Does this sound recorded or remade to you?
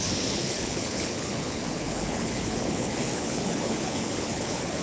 remade